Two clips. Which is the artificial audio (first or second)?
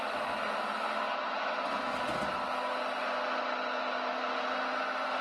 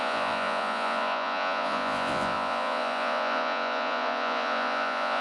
second